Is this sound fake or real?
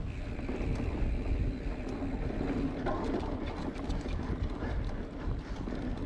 real